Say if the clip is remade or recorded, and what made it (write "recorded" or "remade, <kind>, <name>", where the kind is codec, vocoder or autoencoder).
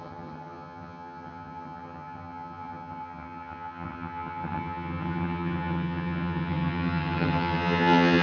remade, vocoder, HiFi-GAN